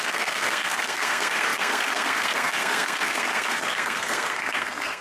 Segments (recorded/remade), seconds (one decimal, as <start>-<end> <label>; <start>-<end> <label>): 0.0-5.0 remade